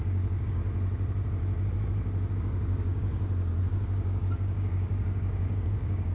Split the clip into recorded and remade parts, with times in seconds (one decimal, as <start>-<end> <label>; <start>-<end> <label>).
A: 0.0-0.6 remade; 0.6-2.3 recorded; 2.3-3.1 remade; 3.1-3.6 recorded; 3.6-6.1 remade